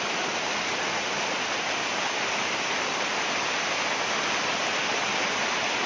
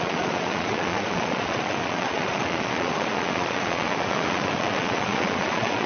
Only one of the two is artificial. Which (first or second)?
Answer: second